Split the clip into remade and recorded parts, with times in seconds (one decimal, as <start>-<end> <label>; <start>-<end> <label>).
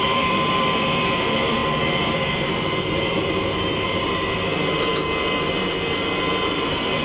0.0-4.9 remade; 4.9-6.5 recorded; 6.5-7.0 remade